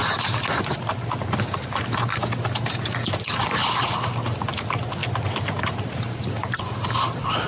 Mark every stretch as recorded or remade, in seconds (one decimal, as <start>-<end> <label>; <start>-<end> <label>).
0.0-7.5 recorded